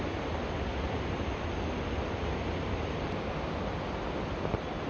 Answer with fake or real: real